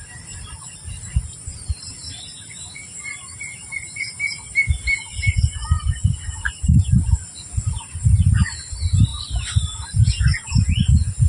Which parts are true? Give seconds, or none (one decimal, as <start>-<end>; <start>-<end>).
0.0-9.1; 9.6-11.3